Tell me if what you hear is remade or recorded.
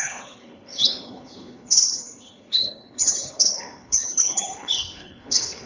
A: remade